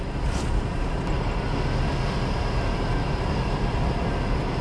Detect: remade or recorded recorded